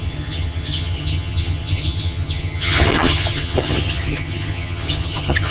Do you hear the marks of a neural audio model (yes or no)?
yes